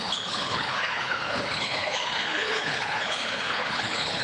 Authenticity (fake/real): fake